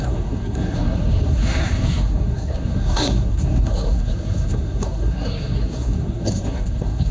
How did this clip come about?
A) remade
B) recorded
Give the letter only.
A